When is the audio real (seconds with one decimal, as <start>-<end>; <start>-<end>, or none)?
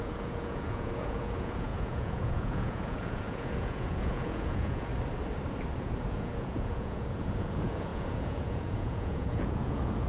4.9-5.8